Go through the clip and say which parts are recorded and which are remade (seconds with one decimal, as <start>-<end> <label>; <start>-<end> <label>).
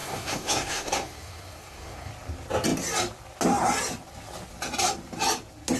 0.0-2.1 remade; 2.1-5.8 recorded